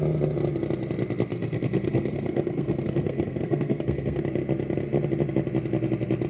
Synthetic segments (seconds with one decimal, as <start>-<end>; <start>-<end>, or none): 1.3-4.2